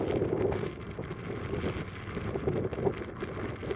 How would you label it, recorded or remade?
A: recorded